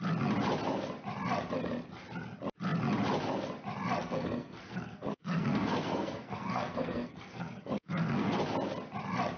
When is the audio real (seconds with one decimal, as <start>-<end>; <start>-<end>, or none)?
0.0-4.0; 8.4-9.4